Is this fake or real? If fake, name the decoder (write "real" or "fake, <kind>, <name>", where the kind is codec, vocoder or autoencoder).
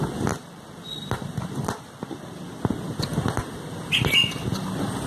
real